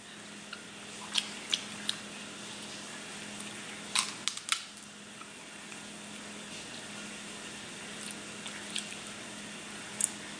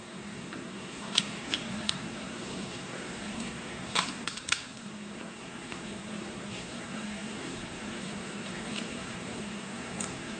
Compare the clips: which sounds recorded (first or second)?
first